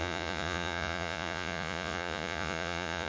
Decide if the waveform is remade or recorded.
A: remade